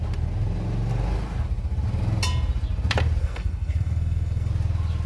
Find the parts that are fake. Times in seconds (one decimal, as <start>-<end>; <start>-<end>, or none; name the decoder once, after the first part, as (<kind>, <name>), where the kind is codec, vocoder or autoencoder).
3.2-4.5 (codec, SNAC)